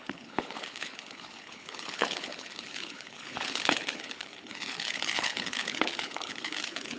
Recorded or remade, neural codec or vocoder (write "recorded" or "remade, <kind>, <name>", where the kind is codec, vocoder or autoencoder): remade, codec, HILCodec